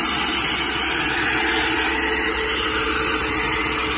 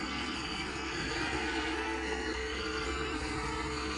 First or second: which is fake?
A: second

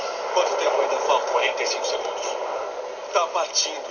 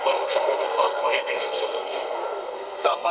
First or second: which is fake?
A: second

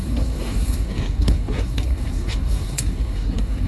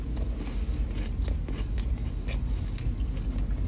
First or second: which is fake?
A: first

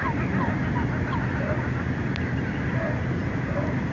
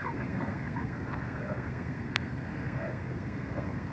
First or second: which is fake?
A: second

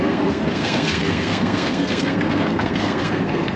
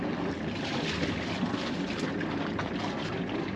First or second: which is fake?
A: first